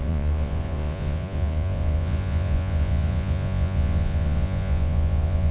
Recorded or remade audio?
remade